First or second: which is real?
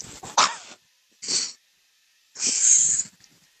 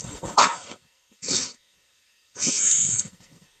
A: first